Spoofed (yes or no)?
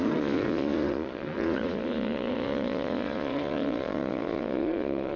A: yes